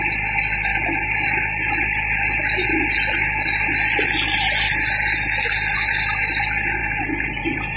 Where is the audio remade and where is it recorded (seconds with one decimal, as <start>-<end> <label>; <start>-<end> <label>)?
0.0-6.8 recorded; 6.8-7.8 remade